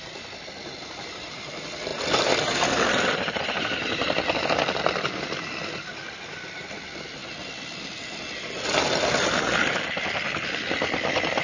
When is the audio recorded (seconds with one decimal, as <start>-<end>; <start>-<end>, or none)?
0.0-11.4